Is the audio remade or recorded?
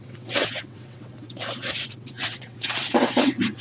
remade